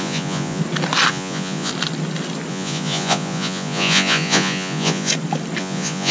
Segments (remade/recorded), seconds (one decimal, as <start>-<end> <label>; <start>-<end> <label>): 0.0-0.6 remade; 0.6-1.1 recorded; 1.1-1.7 remade; 1.7-2.5 recorded; 2.5-5.1 remade; 5.1-5.6 recorded; 5.6-6.1 remade